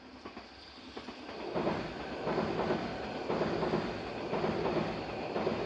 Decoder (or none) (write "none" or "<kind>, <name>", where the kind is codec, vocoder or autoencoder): none